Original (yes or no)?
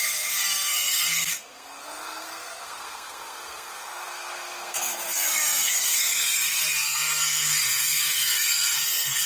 no